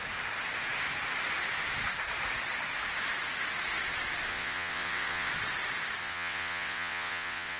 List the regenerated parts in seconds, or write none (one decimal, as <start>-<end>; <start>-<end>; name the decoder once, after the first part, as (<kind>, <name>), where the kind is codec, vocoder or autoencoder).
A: 4.3-5.3 (vocoder, WaveNeXt); 6.0-7.6